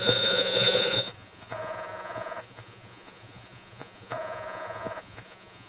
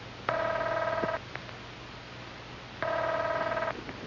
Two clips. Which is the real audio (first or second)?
second